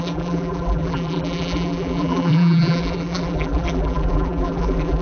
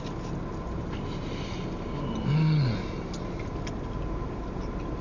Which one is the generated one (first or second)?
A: first